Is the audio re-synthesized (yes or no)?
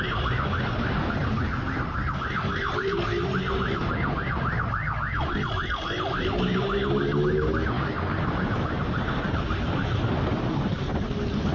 no